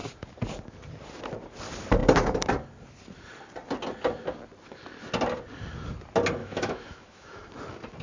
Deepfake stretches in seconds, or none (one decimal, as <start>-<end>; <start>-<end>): 6.4-7.4